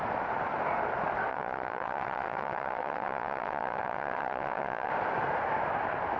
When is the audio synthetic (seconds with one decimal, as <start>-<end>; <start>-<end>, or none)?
1.3-4.9